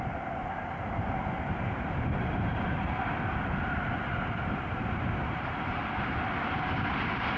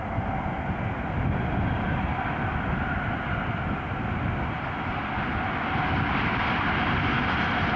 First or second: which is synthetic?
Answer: first